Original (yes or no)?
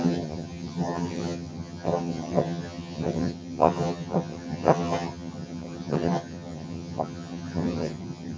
no